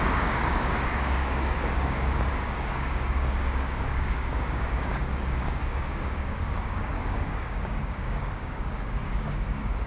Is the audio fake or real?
fake